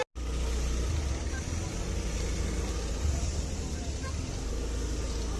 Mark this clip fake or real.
real